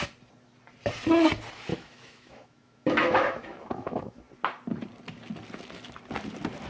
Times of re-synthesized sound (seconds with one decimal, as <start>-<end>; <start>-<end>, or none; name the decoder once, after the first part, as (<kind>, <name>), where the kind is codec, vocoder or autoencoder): 1.7-4.2 (autoencoder, DAC-VAE)